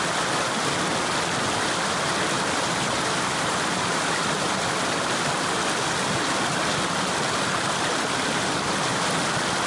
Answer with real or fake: real